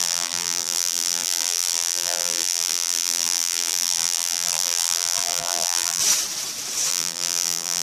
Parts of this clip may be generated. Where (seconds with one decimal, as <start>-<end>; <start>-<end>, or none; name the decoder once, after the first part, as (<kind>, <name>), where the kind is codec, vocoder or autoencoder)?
0.0-6.0 (vocoder, BigVGAN v2); 6.9-7.8